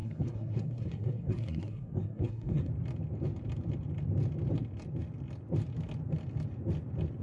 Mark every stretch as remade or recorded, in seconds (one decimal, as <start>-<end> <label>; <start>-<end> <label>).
0.0-2.7 remade; 2.7-7.2 recorded